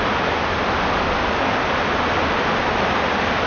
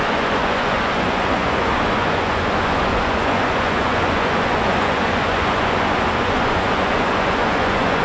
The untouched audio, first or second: first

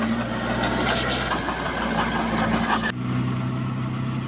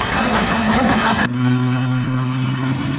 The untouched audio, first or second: first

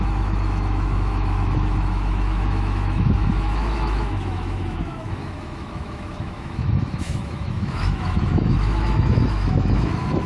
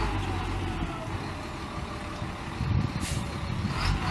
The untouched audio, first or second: second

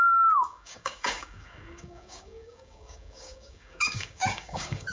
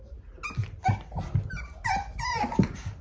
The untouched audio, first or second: second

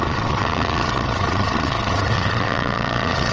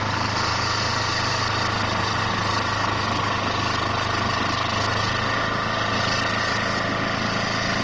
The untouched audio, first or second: second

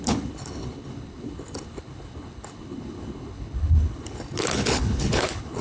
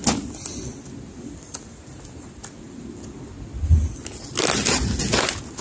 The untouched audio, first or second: second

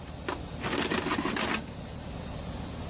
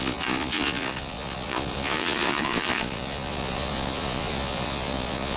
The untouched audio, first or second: first